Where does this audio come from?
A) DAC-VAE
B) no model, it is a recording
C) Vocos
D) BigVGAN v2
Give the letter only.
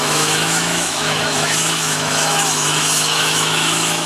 A